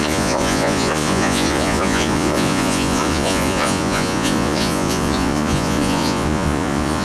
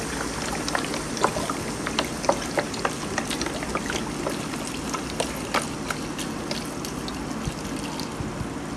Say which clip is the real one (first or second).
second